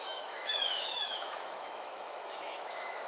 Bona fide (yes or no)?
no